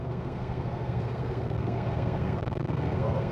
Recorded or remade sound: remade